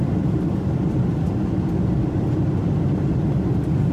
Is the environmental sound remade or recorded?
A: recorded